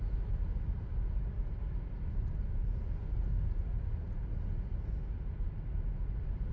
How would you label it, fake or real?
real